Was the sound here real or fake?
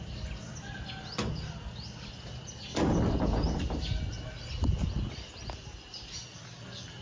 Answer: real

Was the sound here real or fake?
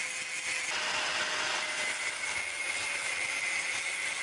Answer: real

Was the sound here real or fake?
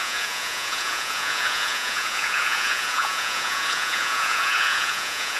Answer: fake